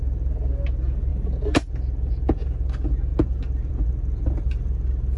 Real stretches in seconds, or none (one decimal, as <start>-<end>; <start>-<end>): 0.0-5.2